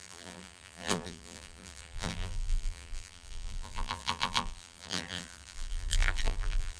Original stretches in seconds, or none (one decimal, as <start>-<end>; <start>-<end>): none